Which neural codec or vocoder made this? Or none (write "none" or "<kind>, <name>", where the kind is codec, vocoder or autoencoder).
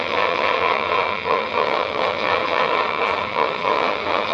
vocoder, WaveNeXt